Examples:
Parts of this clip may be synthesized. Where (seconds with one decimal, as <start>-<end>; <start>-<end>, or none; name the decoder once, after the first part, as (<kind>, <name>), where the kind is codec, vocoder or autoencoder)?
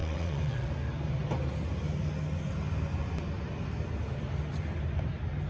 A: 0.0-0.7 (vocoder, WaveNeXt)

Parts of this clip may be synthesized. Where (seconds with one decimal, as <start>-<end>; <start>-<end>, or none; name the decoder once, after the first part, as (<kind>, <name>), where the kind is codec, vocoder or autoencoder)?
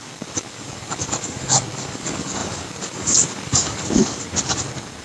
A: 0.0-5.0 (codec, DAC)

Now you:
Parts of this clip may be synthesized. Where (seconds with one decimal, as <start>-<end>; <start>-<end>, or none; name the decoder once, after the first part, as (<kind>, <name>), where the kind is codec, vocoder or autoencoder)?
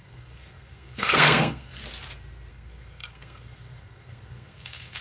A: 0.0-1.8 (codec, SNAC); 2.5-5.0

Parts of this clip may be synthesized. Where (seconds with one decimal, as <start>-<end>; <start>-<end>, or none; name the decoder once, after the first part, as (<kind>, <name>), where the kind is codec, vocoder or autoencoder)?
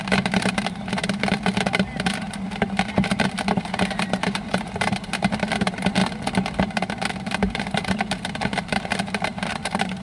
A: 0.0-6.0 (vocoder, BigVGAN v2); 7.1-10.0